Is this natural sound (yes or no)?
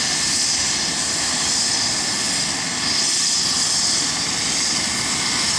no